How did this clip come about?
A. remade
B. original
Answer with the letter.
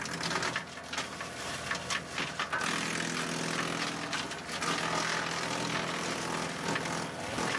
B